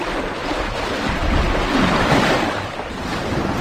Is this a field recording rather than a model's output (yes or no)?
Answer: yes